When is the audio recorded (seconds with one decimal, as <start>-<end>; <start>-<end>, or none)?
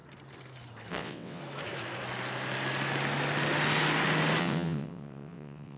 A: 0.0-0.9; 1.4-4.4